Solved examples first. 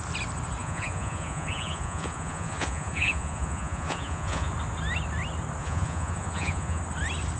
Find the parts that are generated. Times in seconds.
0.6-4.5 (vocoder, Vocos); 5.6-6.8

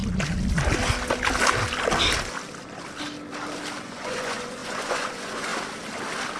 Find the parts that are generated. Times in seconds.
3.8-5.5 (vocoder, Vocos)

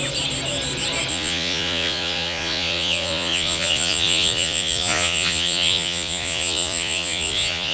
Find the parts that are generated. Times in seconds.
1.1-7.7 (vocoder, Vocos)

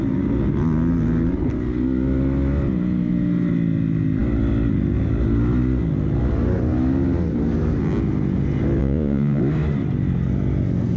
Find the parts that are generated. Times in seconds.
8.8-9.4 (vocoder, Vocos)

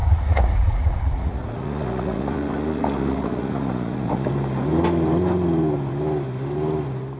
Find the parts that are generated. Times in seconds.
0.0-4.3 (vocoder, Vocos)